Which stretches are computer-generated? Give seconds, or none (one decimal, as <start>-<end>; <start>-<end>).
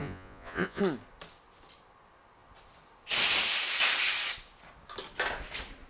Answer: 0.0-0.8